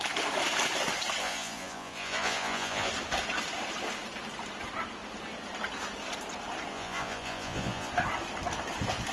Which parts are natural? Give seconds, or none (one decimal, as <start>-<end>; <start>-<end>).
0.0-1.2; 2.9-6.7; 7.9-9.1